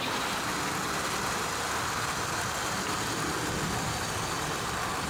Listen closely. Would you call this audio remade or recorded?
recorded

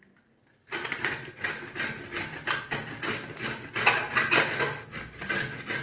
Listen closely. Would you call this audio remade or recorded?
recorded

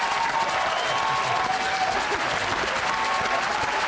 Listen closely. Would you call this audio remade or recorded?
recorded